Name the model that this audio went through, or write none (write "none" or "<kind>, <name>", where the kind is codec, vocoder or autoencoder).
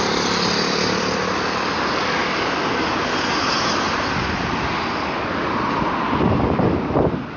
none